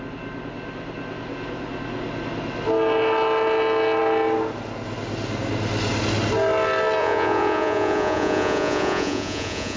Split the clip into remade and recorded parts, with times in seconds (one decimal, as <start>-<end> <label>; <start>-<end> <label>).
0.0-7.0 recorded; 7.0-9.8 remade